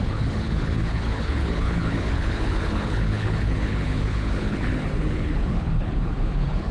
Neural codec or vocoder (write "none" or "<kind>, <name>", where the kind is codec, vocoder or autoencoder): codec, HILCodec